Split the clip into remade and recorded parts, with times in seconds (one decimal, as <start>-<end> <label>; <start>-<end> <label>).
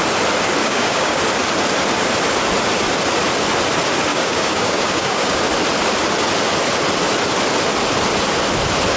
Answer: 0.0-0.6 recorded; 0.6-1.2 remade; 1.2-4.1 recorded; 4.1-5.4 remade; 5.4-9.0 recorded